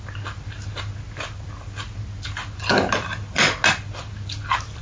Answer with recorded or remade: recorded